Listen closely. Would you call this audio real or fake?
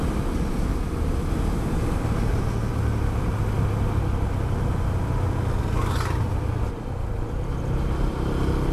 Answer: real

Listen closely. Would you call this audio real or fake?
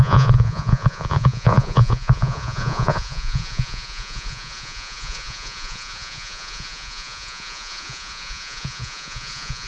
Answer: fake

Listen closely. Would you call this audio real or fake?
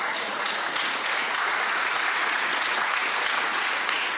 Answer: fake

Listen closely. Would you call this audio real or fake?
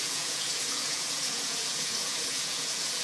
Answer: fake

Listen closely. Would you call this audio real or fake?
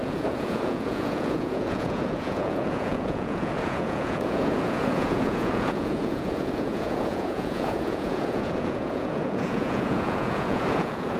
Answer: fake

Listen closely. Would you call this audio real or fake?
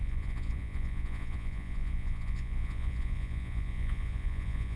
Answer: fake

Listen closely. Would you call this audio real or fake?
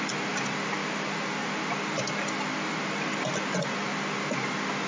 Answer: real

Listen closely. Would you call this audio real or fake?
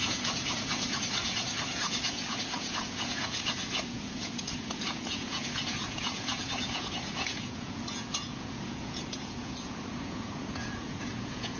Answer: fake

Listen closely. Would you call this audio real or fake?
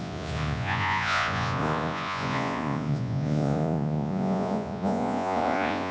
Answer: fake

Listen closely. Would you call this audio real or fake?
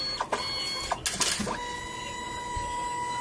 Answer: real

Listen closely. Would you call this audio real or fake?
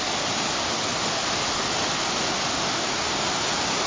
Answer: real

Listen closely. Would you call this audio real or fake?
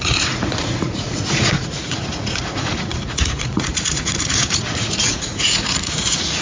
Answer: fake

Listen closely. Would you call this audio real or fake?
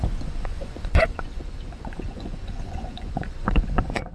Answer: fake